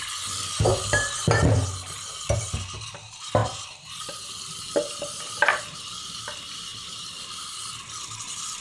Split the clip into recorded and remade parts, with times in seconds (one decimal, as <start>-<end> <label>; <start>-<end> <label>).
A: 0.0-3.4 recorded; 3.4-5.6 remade; 5.6-6.7 recorded; 6.7-7.4 remade; 7.4-8.6 recorded